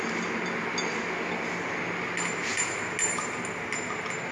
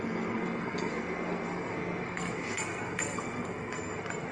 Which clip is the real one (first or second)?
first